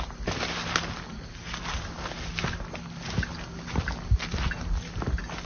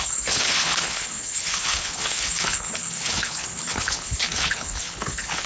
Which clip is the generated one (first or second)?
second